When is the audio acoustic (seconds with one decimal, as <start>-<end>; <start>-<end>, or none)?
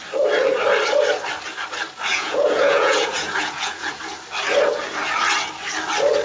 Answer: 0.0-2.1; 4.0-6.2